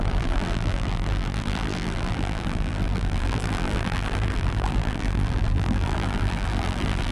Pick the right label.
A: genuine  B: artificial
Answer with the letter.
B